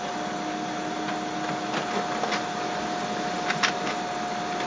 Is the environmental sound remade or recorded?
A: recorded